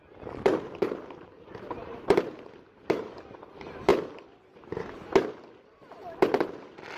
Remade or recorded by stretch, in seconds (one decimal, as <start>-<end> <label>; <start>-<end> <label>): 0.0-0.5 recorded; 0.5-2.5 remade; 2.5-7.0 recorded